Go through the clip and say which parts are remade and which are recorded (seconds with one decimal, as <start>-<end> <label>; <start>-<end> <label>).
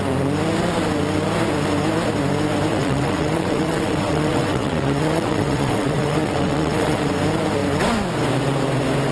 0.0-2.7 recorded; 2.7-7.1 remade; 7.1-9.1 recorded